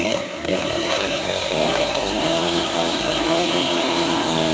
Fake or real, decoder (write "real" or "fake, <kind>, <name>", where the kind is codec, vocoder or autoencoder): fake, codec, SNAC